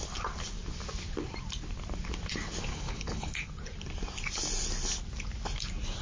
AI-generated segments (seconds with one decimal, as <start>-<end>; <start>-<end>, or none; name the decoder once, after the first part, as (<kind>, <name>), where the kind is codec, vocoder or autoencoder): 2.7-3.5 (codec, HILCodec)